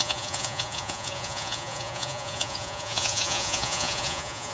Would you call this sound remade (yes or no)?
yes